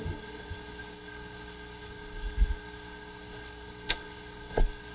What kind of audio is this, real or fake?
fake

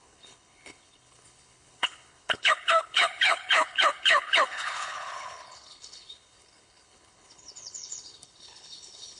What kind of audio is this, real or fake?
fake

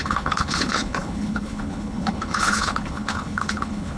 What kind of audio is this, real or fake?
fake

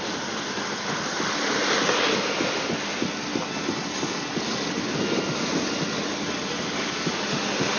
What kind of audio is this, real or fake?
real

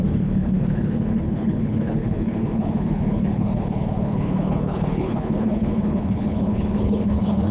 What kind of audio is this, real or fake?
fake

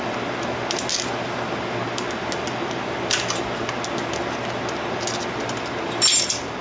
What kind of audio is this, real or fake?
real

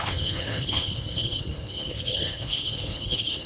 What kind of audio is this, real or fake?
fake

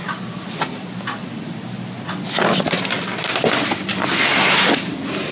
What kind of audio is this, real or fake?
real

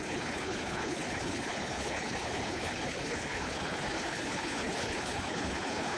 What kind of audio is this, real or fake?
fake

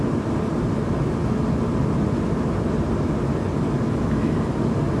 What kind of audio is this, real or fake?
real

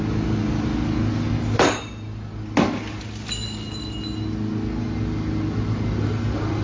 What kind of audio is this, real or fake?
real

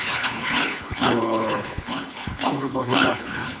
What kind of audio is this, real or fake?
fake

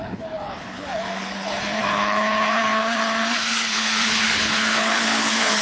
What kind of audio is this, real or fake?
fake